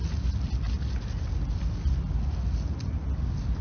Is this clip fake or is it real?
real